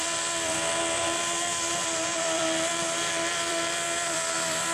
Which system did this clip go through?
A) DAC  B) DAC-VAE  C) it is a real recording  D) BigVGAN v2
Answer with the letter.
D